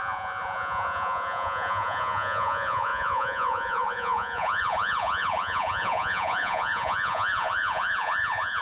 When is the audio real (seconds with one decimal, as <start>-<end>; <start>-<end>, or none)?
none